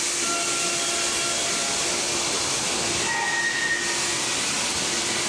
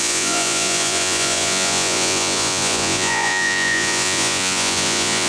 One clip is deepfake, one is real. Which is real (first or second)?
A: first